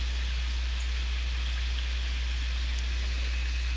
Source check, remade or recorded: recorded